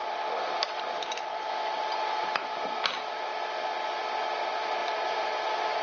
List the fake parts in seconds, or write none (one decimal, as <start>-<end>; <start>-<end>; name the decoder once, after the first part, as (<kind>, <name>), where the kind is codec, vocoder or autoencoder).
none